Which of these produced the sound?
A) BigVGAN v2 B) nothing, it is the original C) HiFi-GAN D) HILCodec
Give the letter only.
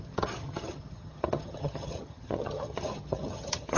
C